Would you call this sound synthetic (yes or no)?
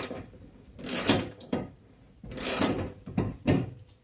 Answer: yes